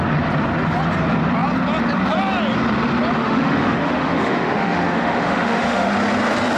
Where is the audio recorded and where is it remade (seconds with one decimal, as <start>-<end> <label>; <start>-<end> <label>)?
0.0-3.2 recorded; 3.2-5.9 remade; 5.9-6.6 recorded